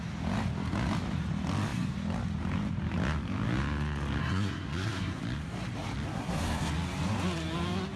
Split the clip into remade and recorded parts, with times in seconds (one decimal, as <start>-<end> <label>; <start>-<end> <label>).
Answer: 0.0-4.2 recorded; 4.2-5.2 remade; 5.2-6.1 recorded; 6.1-6.7 remade; 6.7-8.0 recorded